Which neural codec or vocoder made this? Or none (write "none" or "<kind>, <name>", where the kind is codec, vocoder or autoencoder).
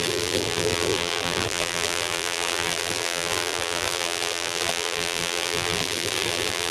vocoder, BigVGAN v2